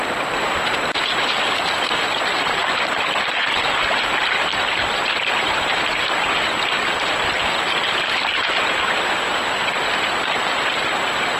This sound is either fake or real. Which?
real